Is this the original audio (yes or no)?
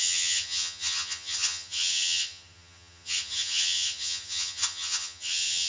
no